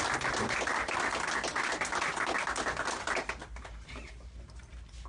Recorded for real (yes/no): yes